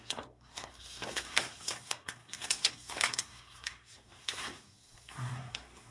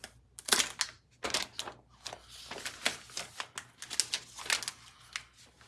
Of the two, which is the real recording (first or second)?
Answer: second